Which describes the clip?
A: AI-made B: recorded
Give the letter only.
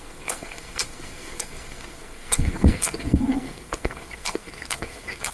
A